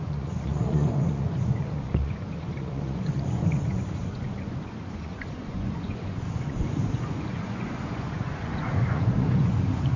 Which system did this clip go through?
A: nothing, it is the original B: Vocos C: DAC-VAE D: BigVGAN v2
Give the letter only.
B